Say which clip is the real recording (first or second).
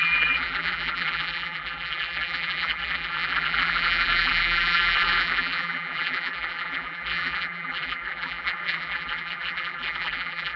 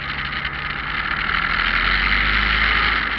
second